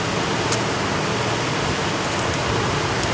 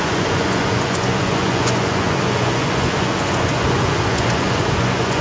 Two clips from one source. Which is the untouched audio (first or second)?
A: first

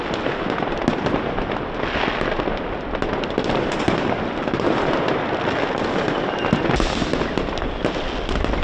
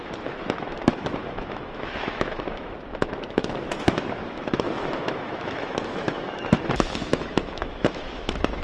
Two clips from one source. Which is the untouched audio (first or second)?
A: first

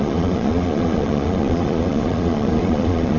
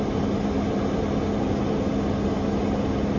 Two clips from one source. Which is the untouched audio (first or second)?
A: second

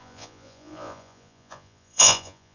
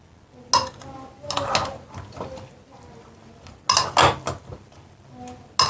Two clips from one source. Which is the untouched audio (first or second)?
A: second